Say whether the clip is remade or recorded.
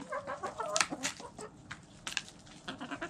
recorded